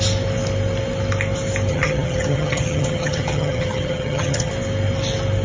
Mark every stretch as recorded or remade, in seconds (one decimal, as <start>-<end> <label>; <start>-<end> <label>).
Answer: 0.0-1.7 recorded; 1.7-4.5 remade; 4.5-5.4 recorded